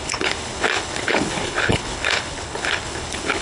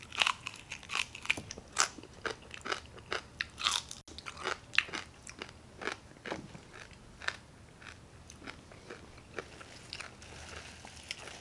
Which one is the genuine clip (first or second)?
second